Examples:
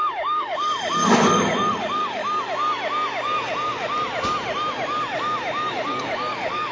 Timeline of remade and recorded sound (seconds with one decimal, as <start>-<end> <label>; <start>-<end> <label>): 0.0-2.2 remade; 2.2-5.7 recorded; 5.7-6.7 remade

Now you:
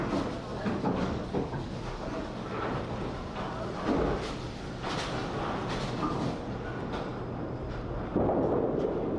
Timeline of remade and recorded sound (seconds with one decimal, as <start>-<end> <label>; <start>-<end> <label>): 0.0-0.5 recorded; 0.5-2.6 remade; 2.6-9.2 recorded

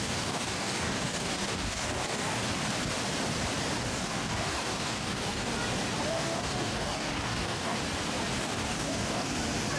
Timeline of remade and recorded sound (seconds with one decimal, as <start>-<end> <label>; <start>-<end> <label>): 0.0-2.4 remade; 2.4-3.8 recorded; 3.8-5.5 remade; 5.5-6.1 recorded; 6.1-7.8 remade; 7.8-8.4 recorded; 8.4-9.3 remade; 9.3-9.8 recorded

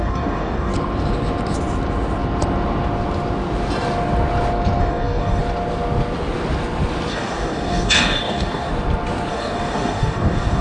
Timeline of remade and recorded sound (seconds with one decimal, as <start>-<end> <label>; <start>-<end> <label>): 0.0-0.7 remade; 0.7-4.8 recorded; 4.8-5.4 remade; 5.4-7.1 recorded; 7.1-8.7 remade; 8.7-9.3 recorded; 9.3-10.6 remade

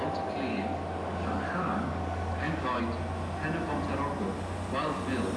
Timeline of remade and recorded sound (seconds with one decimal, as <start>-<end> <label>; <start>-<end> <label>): 0.0-0.5 recorded; 0.5-2.8 remade; 2.8-5.4 recorded

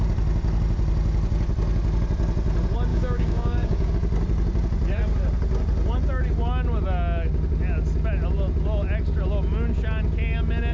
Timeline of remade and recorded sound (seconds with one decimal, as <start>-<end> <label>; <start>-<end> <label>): 0.0-2.9 recorded; 2.9-3.9 remade; 3.9-10.7 recorded

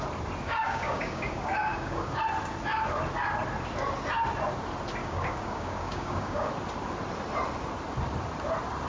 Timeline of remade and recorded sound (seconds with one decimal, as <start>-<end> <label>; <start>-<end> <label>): 0.0-0.4 recorded; 0.4-2.2 remade; 2.2-5.0 recorded; 5.0-6.5 remade; 6.5-8.9 recorded

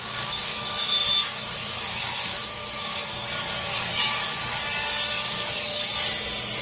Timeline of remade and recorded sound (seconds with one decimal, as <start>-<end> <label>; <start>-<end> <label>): 0.0-4.6 remade; 4.6-5.1 recorded; 5.1-5.9 remade; 5.9-6.6 recorded